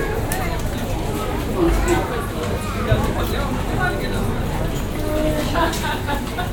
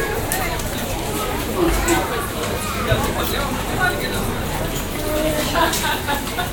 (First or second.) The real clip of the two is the first